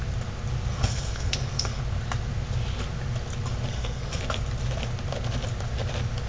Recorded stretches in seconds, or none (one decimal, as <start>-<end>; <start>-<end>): 0.0-0.7; 1.8-3.7; 4.2-6.3